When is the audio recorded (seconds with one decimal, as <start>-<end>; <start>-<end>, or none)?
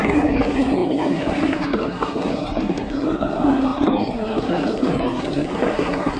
none